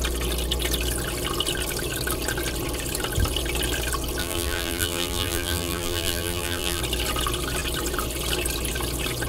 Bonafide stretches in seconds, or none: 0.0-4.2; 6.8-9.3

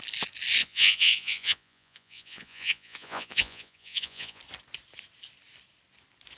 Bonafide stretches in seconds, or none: 0.0-0.6; 4.4-6.4

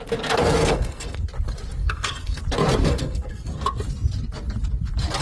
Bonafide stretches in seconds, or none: 0.0-0.6; 1.2-1.8; 2.4-2.8; 3.5-5.2

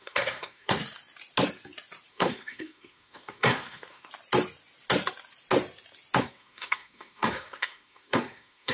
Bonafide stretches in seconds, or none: 0.8-2.1; 4.1-6.2

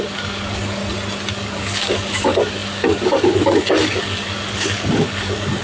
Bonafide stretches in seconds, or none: 0.8-1.3

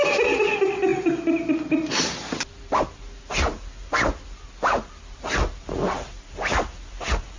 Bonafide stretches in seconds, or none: 0.0-7.4

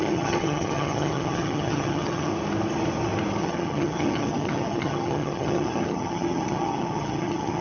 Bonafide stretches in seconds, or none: 2.3-3.4

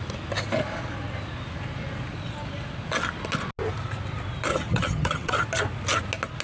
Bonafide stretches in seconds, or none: 0.0-4.5; 5.3-6.4